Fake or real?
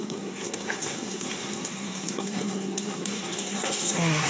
fake